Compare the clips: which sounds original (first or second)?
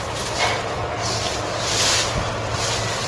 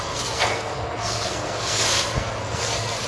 first